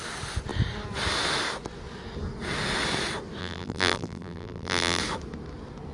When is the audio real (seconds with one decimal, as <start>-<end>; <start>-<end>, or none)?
0.0-3.4; 5.0-5.9